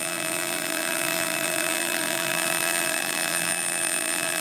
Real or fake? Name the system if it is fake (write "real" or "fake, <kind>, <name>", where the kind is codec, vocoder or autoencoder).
fake, vocoder, BigVGAN v2